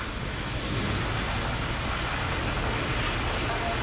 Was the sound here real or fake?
real